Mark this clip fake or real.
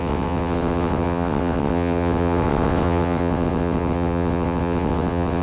fake